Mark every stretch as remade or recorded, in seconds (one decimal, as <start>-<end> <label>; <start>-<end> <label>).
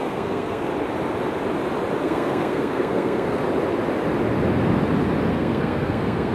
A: 0.0-0.7 remade; 0.7-2.0 recorded; 2.0-3.4 remade; 3.4-5.3 recorded; 5.3-6.3 remade